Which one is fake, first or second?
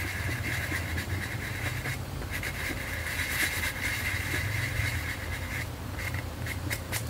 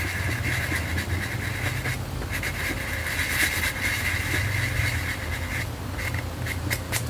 first